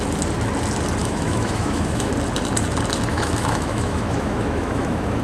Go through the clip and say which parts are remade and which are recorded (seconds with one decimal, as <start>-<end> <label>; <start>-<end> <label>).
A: 0.0-1.0 recorded; 1.0-2.1 remade; 2.1-3.1 recorded; 3.1-5.2 remade